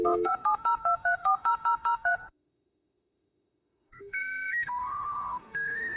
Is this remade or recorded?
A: remade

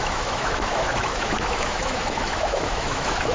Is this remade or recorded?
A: remade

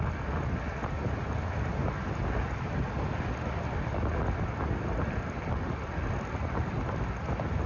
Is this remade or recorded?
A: recorded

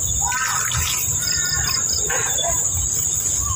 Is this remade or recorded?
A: recorded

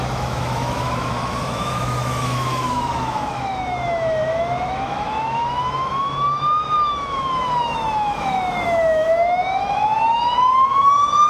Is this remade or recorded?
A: remade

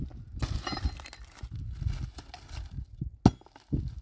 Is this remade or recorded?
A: recorded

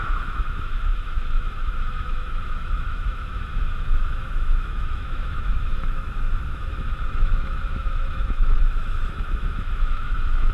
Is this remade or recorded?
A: remade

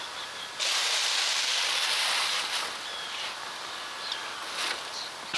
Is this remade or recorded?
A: recorded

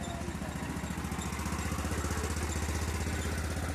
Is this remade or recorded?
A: recorded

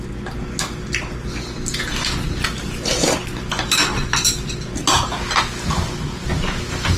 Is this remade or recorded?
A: recorded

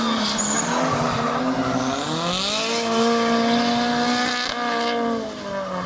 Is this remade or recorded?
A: recorded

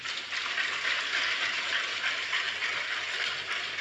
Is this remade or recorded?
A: recorded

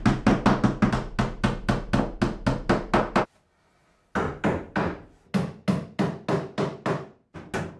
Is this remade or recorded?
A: recorded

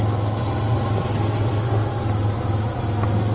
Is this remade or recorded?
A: recorded